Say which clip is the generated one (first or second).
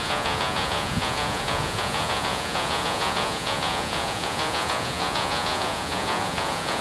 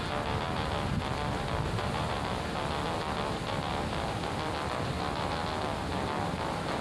first